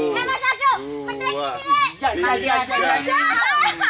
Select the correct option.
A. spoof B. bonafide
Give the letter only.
B